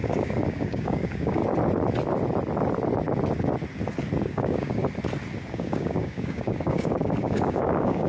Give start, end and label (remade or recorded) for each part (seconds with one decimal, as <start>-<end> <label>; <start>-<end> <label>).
0.0-1.4 remade; 1.4-4.2 recorded; 4.2-4.8 remade; 4.8-5.5 recorded; 5.5-8.1 remade